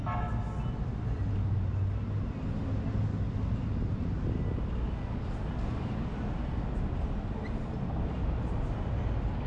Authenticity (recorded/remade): recorded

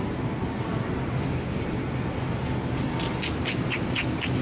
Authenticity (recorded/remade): recorded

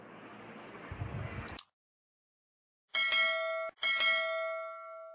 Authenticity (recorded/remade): recorded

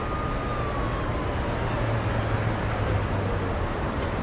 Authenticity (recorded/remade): recorded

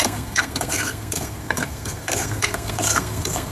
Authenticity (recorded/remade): remade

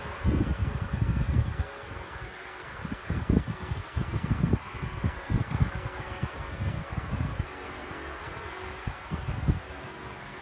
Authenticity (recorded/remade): remade